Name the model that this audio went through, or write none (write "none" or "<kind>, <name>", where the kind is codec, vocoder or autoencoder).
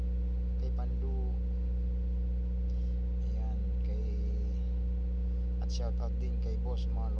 none